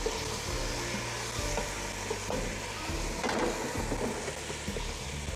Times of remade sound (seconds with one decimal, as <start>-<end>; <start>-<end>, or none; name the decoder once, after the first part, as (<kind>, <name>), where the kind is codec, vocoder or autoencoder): none

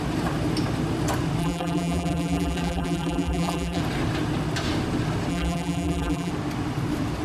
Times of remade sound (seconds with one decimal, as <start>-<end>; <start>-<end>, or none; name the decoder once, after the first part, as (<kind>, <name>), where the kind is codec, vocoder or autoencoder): 1.4-3.8 (vocoder, BigVGAN v2); 5.3-6.3

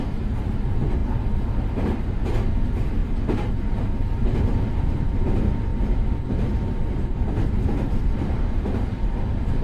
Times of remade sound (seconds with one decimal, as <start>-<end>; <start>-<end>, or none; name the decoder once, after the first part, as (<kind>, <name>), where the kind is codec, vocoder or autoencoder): 0.0-5.7 (vocoder, BigVGAN v2); 6.8-9.6

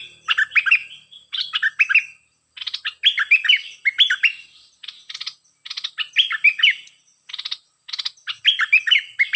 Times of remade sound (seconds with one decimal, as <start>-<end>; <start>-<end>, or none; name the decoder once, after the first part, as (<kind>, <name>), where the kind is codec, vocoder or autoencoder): none

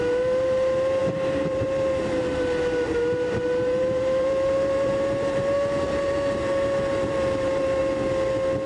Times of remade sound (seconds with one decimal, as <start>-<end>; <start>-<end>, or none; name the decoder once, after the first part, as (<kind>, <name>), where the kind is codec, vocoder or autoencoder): 0.0-7.8 (vocoder, BigVGAN v2)

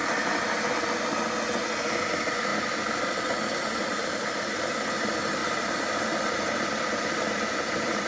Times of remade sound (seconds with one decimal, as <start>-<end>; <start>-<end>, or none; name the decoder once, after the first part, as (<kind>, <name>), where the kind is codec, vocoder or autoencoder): 1.8-2.5 (vocoder, BigVGAN v2); 3.6-8.1